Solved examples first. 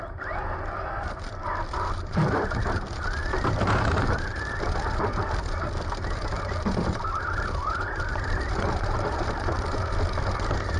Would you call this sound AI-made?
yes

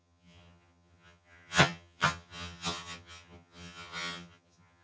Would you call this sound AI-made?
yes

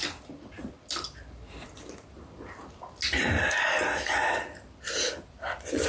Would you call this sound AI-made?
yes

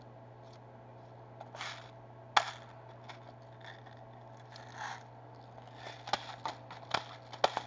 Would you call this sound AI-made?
no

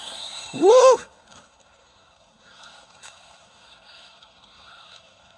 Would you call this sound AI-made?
yes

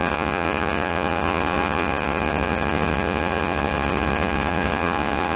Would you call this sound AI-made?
yes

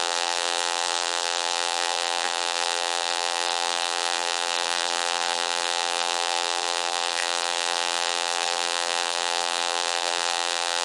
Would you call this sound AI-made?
yes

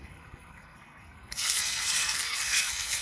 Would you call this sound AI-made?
yes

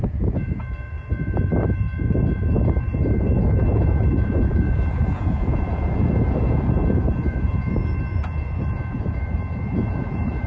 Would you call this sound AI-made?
yes